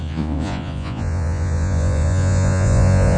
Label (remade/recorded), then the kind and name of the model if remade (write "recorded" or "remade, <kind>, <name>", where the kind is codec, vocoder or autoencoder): remade, vocoder, Vocos